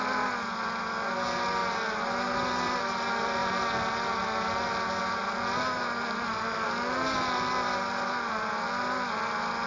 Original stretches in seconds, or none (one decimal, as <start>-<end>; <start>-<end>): 0.0-9.7